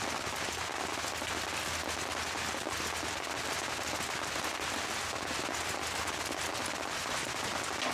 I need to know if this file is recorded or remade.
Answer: recorded